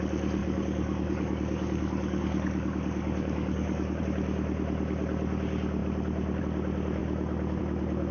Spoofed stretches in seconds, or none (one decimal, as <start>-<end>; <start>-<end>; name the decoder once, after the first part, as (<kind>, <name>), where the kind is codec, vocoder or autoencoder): 0.4-4.0 (codec, DAC)